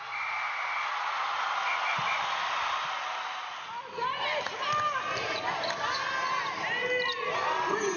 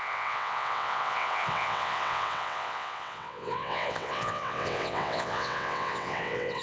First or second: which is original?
first